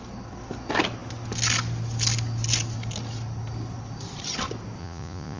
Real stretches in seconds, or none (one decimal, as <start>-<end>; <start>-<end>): 0.0-4.8